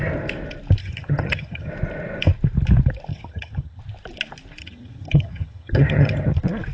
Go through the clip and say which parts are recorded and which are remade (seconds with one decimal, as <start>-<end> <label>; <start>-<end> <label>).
0.0-0.8 recorded; 0.8-1.7 remade; 1.7-3.1 recorded; 3.1-3.8 remade; 3.8-4.6 recorded; 4.6-6.3 remade; 6.3-6.7 recorded

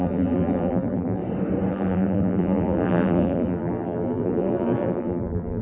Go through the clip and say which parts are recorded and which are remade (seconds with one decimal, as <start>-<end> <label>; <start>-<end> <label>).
0.0-1.2 remade; 1.2-1.7 recorded; 1.7-5.6 remade

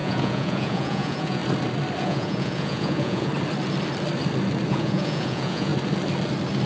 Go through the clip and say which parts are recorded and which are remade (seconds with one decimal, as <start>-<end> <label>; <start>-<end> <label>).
0.0-1.4 remade; 1.4-2.0 recorded; 2.0-3.3 remade; 3.3-4.7 recorded; 4.7-5.7 remade; 5.7-6.7 recorded

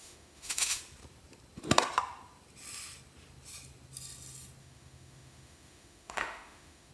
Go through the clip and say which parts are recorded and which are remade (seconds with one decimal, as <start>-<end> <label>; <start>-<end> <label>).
0.0-0.8 remade; 0.8-4.6 recorded; 4.6-6.9 remade

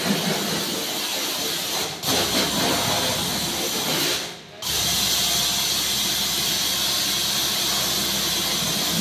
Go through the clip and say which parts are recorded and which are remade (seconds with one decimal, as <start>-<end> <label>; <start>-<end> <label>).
0.0-1.1 recorded; 1.1-5.0 remade; 5.0-9.0 recorded

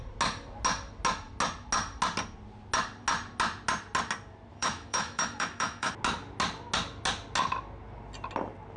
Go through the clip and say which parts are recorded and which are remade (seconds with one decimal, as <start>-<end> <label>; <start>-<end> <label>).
0.0-4.5 recorded; 4.5-5.9 remade; 5.9-8.8 recorded

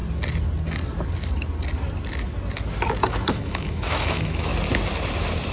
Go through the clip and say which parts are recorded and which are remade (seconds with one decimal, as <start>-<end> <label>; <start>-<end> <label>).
0.0-3.3 recorded; 3.3-4.5 remade; 4.5-5.5 recorded

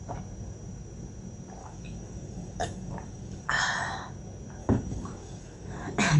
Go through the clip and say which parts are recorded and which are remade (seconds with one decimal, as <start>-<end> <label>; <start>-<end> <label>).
0.0-1.6 recorded; 1.6-3.6 remade; 3.6-4.6 recorded; 4.6-6.2 remade